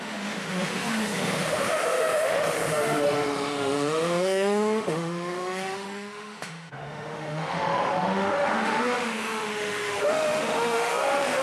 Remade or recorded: remade